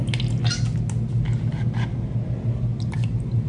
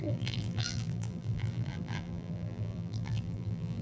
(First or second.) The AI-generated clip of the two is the second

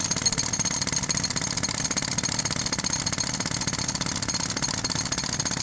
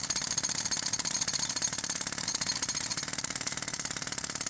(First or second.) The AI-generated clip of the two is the second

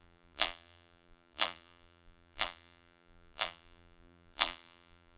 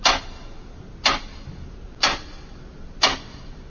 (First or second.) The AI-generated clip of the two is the first